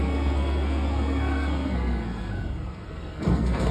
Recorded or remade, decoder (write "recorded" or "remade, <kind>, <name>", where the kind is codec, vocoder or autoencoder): remade, codec, SNAC